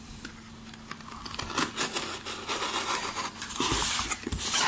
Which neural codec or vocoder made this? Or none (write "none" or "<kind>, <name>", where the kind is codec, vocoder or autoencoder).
none